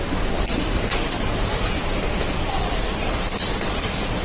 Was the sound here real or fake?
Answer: fake